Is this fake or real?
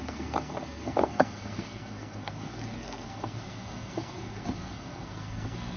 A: fake